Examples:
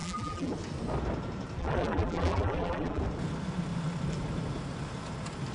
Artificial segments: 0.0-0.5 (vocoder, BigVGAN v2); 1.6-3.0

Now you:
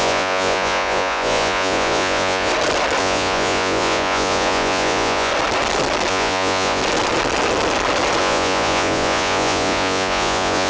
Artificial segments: 0.0-2.5 (vocoder, Vocos); 3.0-5.3; 6.1-6.8; 8.2-10.7